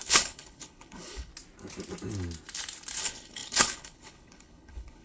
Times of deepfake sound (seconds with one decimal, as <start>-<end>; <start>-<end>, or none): 0.0-1.3; 3.0-5.0